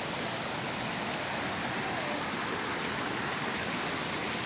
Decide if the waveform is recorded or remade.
recorded